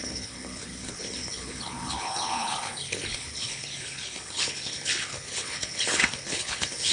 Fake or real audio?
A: fake